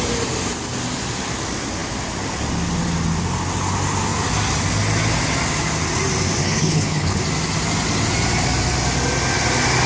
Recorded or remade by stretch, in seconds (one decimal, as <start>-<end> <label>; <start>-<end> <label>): 0.0-6.4 recorded; 6.4-7.2 remade; 7.2-9.9 recorded